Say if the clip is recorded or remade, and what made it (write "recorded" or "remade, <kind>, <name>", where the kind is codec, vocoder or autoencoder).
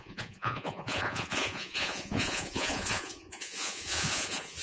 remade, vocoder, Vocos